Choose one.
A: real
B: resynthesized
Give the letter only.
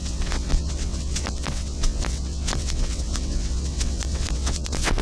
B